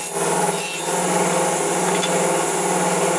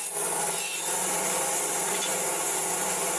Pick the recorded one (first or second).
first